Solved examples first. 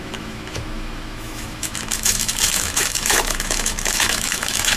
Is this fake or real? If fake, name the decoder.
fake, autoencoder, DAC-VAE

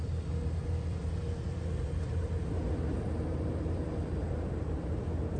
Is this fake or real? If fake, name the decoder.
fake, vocoder, BigVGAN v2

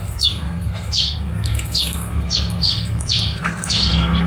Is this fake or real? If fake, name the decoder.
fake, codec, SNAC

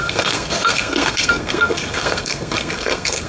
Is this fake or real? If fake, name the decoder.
fake, codec, SNAC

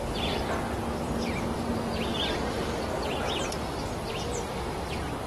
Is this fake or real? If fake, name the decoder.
real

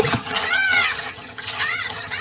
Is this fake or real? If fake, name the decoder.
fake, vocoder, HiFi-GAN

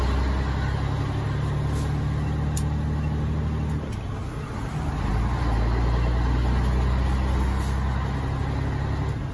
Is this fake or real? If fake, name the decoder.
real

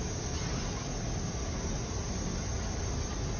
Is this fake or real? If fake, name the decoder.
real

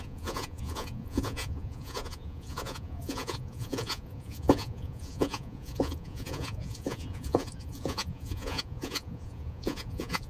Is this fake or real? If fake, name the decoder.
fake, vocoder, Vocos